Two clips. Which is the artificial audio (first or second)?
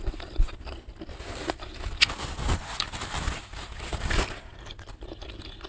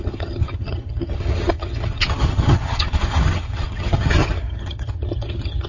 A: second